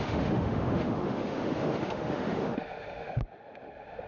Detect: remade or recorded remade